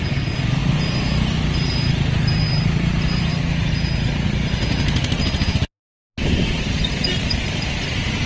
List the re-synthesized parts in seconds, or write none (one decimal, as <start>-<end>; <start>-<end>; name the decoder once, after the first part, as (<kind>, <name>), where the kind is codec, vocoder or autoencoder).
0.6-3.3 (vocoder, BigVGAN v2)